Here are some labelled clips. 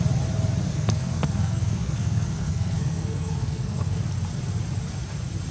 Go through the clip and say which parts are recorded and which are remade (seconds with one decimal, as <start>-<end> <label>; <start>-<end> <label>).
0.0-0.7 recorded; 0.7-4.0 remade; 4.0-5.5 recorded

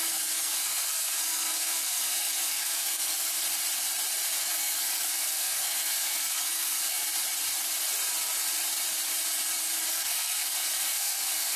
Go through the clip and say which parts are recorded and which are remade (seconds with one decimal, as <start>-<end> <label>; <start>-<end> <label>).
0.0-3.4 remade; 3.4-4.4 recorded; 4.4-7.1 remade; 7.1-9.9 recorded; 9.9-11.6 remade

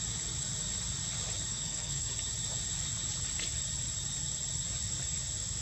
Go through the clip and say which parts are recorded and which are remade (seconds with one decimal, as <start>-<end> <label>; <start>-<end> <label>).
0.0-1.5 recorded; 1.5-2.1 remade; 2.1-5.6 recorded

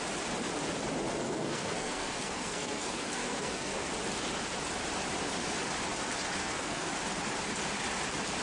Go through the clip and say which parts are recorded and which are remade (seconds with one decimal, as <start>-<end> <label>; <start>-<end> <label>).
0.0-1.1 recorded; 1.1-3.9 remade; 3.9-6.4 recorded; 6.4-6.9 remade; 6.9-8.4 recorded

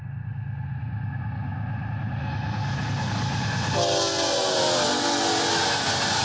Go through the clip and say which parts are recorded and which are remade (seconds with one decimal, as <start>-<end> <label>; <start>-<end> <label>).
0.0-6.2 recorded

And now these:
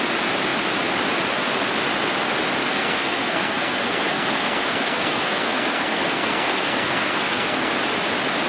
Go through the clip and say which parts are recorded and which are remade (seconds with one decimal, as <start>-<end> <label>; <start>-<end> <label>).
0.0-2.6 recorded; 2.6-7.7 remade; 7.7-8.5 recorded